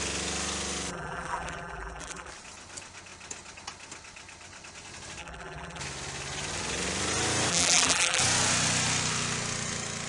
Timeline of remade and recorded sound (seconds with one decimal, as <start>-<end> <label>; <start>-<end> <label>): 0.0-0.9 recorded; 0.9-2.3 remade; 2.3-5.2 recorded; 5.2-5.8 remade; 5.8-7.5 recorded; 7.5-8.2 remade; 8.2-10.1 recorded